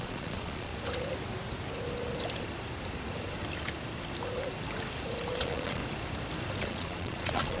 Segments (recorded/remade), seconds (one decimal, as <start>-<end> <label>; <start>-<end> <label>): 0.0-0.7 remade; 0.7-5.3 recorded; 5.3-5.8 remade; 5.8-6.6 recorded; 6.6-7.6 remade